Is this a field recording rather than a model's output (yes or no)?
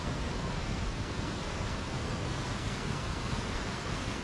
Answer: no